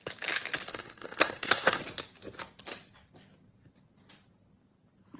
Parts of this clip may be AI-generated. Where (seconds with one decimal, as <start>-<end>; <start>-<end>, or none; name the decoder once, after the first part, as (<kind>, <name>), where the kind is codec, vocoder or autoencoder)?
0.7-1.8 (codec, SNAC)